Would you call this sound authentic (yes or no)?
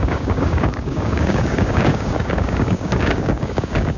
no